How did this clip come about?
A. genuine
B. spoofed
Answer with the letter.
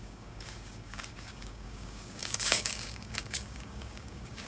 B